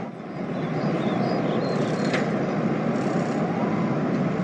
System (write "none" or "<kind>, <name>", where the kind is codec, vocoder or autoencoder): none